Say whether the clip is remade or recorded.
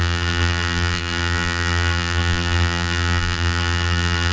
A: remade